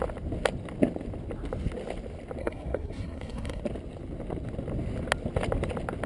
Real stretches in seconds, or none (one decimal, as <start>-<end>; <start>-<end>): 0.0-2.4; 3.6-6.1